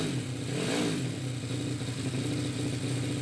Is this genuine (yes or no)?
yes